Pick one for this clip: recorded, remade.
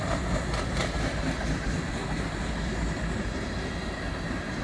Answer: recorded